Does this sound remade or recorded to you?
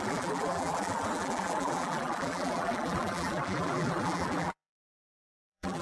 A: remade